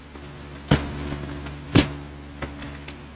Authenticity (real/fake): real